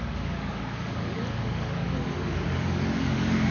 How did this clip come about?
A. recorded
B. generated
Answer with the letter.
B